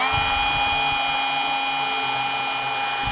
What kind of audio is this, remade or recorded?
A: recorded